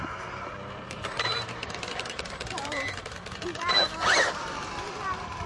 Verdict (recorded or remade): remade